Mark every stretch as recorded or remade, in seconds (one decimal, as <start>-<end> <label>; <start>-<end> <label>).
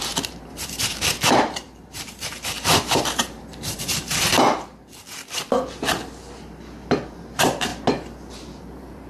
0.0-4.3 remade; 4.3-6.9 recorded; 6.9-7.7 remade; 7.7-8.3 recorded; 8.3-9.1 remade